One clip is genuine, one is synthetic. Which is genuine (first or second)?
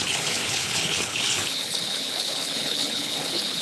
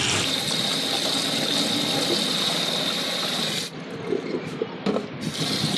second